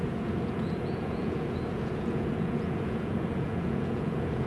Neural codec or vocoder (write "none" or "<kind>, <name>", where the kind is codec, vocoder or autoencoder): vocoder, Vocos